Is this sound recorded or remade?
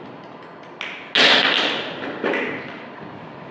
recorded